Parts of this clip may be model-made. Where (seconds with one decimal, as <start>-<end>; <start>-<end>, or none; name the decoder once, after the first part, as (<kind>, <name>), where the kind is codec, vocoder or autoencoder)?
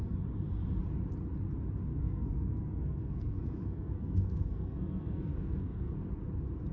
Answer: 1.9-5.9 (codec, SNAC)